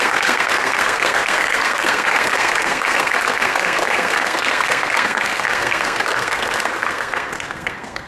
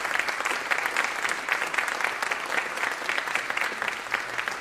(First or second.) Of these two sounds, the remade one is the first